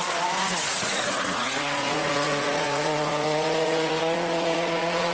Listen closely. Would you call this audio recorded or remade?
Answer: remade